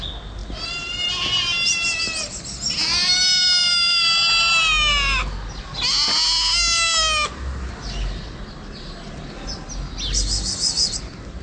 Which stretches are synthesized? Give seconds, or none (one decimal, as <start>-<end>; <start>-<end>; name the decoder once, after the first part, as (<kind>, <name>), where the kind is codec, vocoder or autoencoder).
none